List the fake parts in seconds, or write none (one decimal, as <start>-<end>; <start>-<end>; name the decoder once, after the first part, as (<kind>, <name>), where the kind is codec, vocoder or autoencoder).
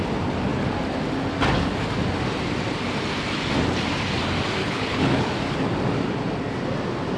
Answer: 4.6-5.3 (codec, HILCodec)